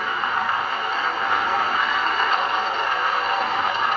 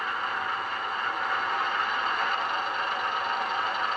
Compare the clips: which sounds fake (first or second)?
first